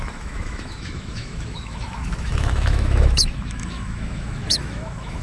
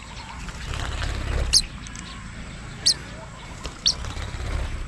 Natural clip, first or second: second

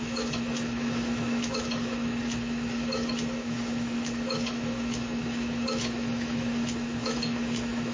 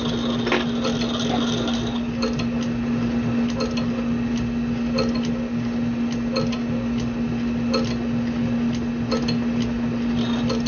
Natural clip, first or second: second